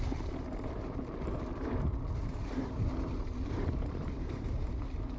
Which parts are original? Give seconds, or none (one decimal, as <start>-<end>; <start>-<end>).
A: 0.0-2.2; 4.5-5.2